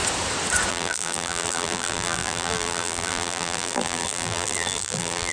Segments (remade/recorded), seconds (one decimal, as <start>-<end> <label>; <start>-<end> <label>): 0.0-0.7 recorded; 0.7-5.3 remade